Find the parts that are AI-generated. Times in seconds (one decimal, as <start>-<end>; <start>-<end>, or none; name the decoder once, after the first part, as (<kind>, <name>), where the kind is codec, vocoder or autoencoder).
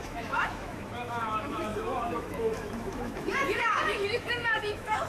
0.0-5.1 (autoencoder, DAC-VAE)